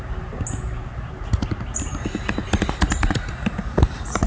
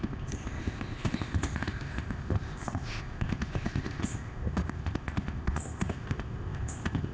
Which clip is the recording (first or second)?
first